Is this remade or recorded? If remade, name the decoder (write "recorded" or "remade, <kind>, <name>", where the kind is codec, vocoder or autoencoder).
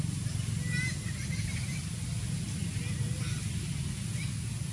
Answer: recorded